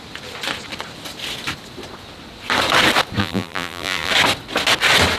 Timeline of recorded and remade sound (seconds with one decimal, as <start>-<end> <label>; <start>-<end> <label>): 0.0-3.2 recorded; 3.2-4.1 remade; 4.1-5.2 recorded